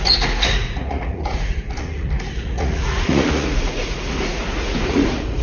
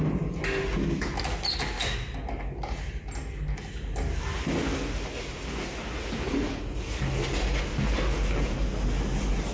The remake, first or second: first